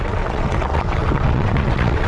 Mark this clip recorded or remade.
remade